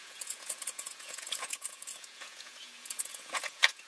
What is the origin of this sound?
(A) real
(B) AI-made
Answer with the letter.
B